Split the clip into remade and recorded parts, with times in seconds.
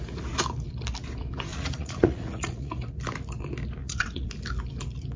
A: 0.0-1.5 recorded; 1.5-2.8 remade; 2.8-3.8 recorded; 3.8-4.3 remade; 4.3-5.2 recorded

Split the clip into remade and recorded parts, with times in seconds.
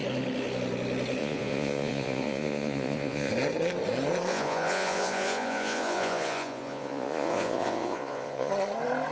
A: 0.0-1.2 recorded; 1.2-3.3 remade; 3.3-4.3 recorded; 4.3-8.5 remade; 8.5-9.1 recorded